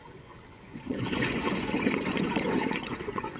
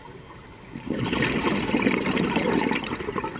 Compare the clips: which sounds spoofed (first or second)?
first